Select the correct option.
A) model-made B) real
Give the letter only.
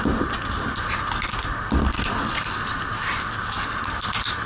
B